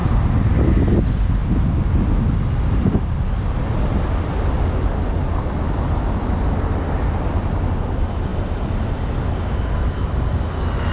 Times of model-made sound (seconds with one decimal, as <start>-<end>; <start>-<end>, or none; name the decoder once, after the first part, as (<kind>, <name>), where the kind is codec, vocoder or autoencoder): 0.0-0.8 (vocoder, BigVGAN v2)